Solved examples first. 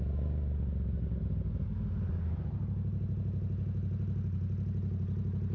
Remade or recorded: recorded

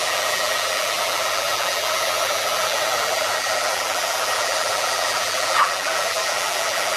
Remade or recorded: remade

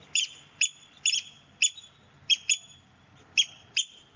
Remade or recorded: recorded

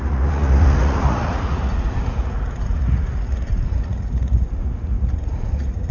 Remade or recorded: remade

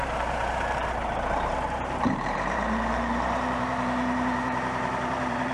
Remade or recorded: remade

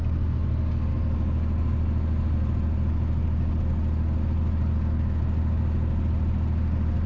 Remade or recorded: recorded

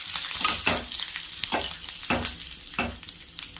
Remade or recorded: recorded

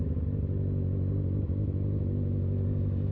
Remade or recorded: recorded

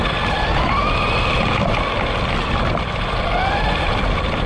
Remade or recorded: recorded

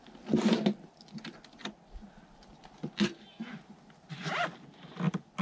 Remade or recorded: recorded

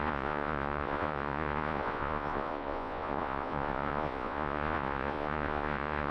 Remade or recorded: remade